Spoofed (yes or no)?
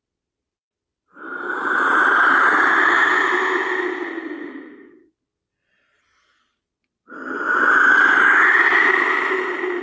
no